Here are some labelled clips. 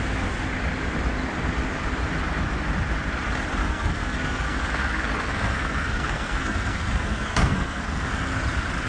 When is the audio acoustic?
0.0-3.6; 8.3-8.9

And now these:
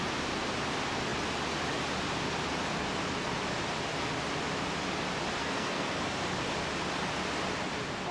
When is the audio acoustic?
0.0-5.4; 6.0-8.1

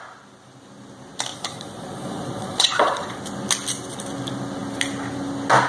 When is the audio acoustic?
0.0-1.3; 3.2-5.7